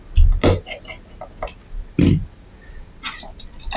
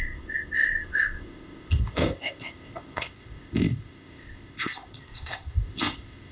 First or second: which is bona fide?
first